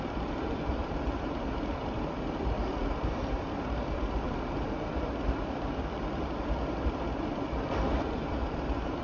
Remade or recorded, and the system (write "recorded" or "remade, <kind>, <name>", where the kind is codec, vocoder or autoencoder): remade, vocoder, BigVGAN v2